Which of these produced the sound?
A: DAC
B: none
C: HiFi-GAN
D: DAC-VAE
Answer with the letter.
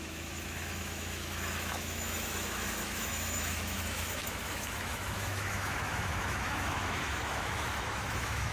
D